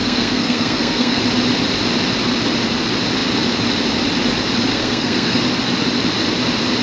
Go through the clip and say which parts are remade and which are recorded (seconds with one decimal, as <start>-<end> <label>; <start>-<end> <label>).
0.0-1.2 remade; 1.2-4.7 recorded; 4.7-5.4 remade; 5.4-6.8 recorded